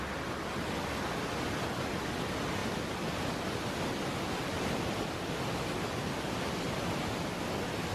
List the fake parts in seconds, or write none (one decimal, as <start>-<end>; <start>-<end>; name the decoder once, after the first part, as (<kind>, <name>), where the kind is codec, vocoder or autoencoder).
none